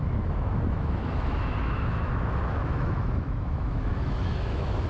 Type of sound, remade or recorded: remade